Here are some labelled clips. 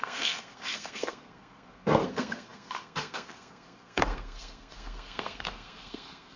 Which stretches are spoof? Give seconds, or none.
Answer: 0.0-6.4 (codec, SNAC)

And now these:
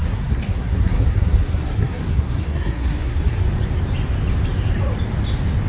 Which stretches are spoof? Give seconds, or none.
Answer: 0.0-3.4 (codec, SNAC)

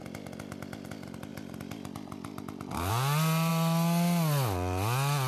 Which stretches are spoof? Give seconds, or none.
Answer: none